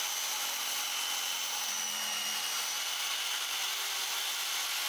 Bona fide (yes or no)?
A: yes